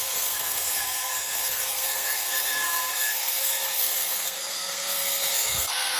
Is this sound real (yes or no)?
no